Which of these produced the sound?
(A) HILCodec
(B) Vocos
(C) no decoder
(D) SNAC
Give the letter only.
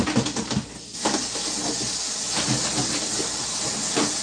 C